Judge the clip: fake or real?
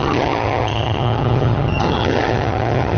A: fake